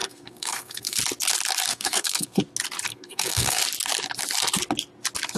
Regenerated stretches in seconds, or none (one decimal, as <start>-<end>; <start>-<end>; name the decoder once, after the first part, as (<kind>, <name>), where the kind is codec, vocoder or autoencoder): 0.0-1.0 (codec, SNAC); 1.7-2.4; 2.9-3.6